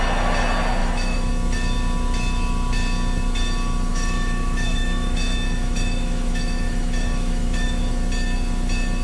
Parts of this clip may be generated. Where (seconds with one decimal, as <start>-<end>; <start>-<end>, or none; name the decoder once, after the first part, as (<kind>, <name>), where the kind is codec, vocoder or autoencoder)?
0.8-1.3 (autoencoder, DAC-VAE); 3.9-7.8